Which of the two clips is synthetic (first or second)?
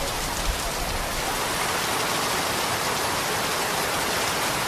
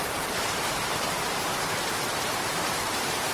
second